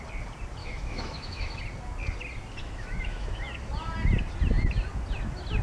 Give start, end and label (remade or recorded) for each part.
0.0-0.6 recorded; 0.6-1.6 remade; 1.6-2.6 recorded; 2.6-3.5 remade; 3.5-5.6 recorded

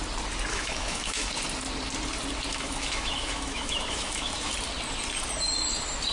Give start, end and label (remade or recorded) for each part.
0.0-0.5 recorded; 0.5-1.3 remade; 1.3-2.5 recorded; 2.5-4.5 remade; 4.5-6.1 recorded

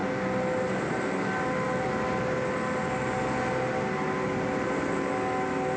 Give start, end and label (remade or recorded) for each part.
0.0-5.8 recorded

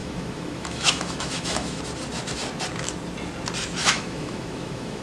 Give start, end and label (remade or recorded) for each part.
0.0-1.8 remade; 1.8-3.8 recorded; 3.8-5.0 remade

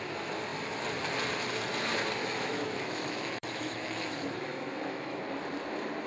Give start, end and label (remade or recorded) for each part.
0.0-2.2 recorded; 2.2-5.2 remade; 5.2-6.1 recorded

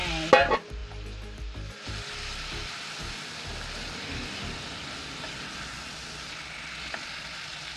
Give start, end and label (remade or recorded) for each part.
0.0-7.8 recorded

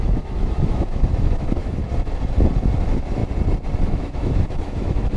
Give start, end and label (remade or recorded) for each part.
0.0-1.8 remade; 1.8-2.7 recorded; 2.7-3.2 remade; 3.2-3.8 recorded; 3.8-5.2 remade

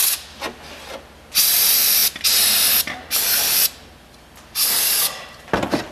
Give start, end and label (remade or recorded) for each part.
0.0-5.9 recorded